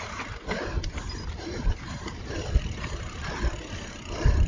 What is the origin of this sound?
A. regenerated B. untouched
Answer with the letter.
A